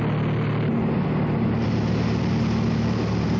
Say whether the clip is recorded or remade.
recorded